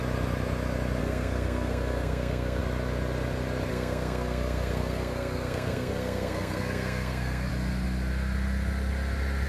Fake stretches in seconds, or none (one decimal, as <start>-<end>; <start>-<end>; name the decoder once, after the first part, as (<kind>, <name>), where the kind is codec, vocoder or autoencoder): 1.0-2.6 (codec, SNAC); 3.7-7.5